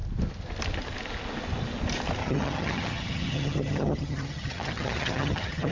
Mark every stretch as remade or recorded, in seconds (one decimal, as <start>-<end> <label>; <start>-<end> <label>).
0.0-2.2 recorded; 2.2-5.7 remade